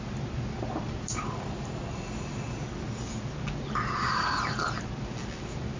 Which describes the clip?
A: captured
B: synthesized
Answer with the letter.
A